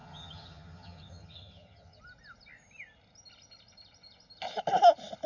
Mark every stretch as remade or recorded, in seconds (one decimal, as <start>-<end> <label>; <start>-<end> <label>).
0.0-2.0 remade; 2.0-5.3 recorded